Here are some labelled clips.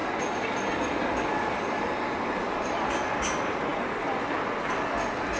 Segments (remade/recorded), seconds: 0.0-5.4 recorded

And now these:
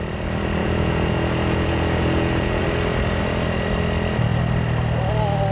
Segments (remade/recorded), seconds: 0.0-0.6 recorded; 0.6-2.6 remade; 2.6-5.5 recorded

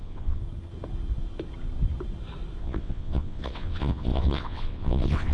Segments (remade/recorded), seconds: 0.0-0.4 remade; 0.4-2.6 recorded; 2.6-5.3 remade

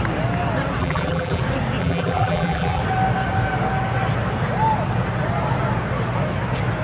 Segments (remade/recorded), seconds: 0.0-0.8 recorded; 0.8-1.4 remade; 1.4-1.8 recorded; 1.8-2.8 remade; 2.8-6.8 recorded